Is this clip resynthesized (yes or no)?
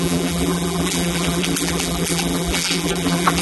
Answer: yes